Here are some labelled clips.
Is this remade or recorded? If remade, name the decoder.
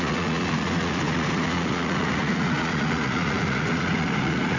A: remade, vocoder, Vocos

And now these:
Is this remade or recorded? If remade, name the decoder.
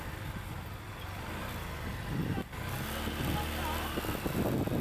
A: recorded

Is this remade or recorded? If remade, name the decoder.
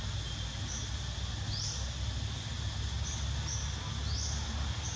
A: recorded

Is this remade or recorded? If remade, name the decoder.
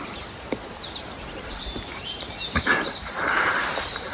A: remade, vocoder, BigVGAN v2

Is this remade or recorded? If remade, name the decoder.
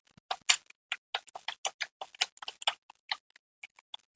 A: recorded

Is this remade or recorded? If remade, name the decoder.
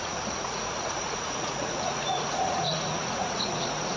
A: remade, vocoder, Vocos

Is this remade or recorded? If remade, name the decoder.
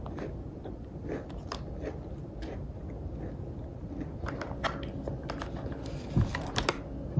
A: recorded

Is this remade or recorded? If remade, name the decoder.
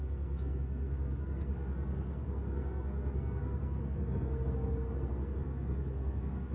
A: remade, codec, SNAC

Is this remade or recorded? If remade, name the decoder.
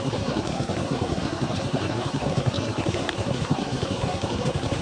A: remade, codec, SNAC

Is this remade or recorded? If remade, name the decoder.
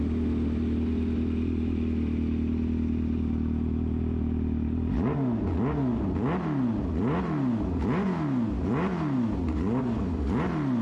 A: recorded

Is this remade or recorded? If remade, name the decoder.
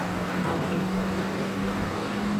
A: remade, codec, DAC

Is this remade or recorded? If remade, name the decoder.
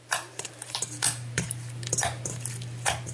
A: remade, vocoder, BigVGAN v2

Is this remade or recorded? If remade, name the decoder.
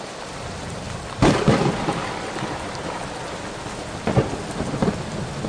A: remade, vocoder, BigVGAN v2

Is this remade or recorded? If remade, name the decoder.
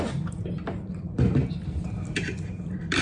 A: remade, vocoder, BigVGAN v2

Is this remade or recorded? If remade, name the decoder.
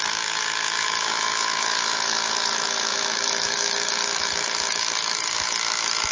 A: remade, autoencoder, DAC-VAE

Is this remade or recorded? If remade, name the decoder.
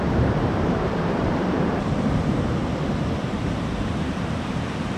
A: remade, vocoder, BigVGAN v2